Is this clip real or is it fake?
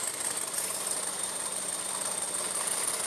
real